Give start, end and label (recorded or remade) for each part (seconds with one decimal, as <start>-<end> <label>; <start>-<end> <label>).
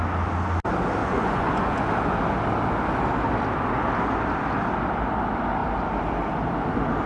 0.0-1.0 recorded; 1.0-1.9 remade; 1.9-7.1 recorded